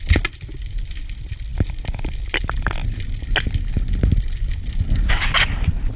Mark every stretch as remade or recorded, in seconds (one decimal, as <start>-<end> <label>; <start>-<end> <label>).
0.0-6.0 recorded